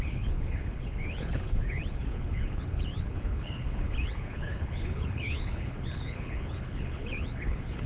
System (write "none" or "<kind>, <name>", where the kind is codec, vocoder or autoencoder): codec, HILCodec